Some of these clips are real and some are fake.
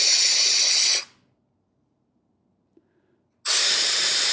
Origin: real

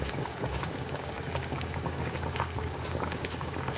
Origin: fake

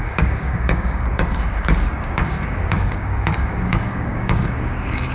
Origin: fake